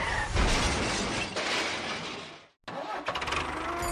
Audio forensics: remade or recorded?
recorded